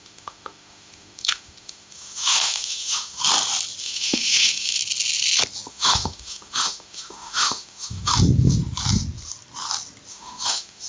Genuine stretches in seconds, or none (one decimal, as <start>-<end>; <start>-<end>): 3.2-3.8; 4.8-5.7; 8.1-10.1